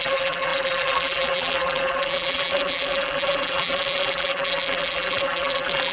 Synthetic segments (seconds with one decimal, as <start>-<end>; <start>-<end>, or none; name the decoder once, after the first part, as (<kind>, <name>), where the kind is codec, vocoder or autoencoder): 0.0-5.9 (vocoder, BigVGAN v2)